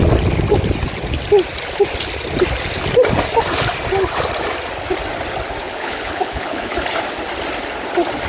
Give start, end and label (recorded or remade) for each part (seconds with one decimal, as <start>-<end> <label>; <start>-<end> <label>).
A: 0.0-5.6 recorded; 5.6-6.7 remade; 6.7-8.3 recorded